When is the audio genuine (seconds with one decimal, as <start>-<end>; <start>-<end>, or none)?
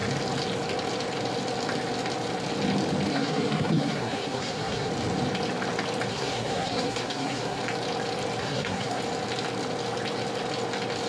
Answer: 0.0-3.1; 4.9-6.1; 7.6-8.4; 9.0-11.1